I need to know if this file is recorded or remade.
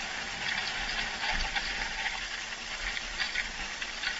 recorded